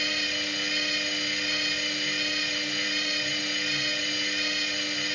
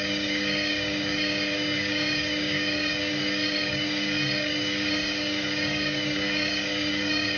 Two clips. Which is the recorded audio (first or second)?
first